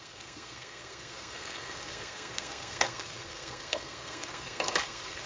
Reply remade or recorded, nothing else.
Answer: remade